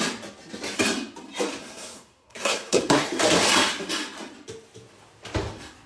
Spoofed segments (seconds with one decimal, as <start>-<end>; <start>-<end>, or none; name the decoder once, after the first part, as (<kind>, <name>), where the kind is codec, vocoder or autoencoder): 1.6-3.2 (codec, SNAC)